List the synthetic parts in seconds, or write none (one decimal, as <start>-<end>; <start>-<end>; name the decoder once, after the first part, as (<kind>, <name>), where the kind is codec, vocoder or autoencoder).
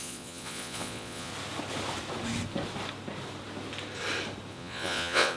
0.0-1.3 (vocoder, Vocos); 4.5-5.4